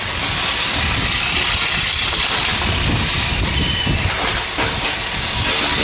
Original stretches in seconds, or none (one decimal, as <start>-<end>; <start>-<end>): 0.0-5.8

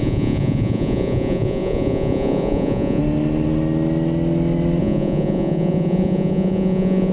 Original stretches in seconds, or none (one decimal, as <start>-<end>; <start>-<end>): 3.0-4.8

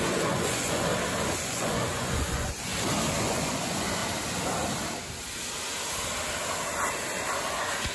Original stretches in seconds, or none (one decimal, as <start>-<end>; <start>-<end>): 0.9-1.4; 2.7-3.2; 4.0-7.5

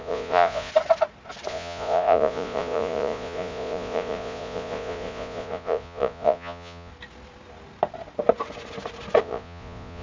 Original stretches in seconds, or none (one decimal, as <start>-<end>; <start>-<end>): 0.7-1.5; 6.9-9.2

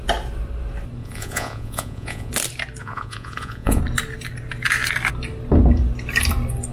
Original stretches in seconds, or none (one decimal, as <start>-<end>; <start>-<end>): 0.0-1.0; 2.3-2.8; 3.8-6.7

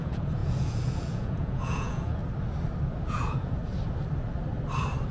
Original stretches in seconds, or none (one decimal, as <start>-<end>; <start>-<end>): 2.2-3.0; 3.6-5.1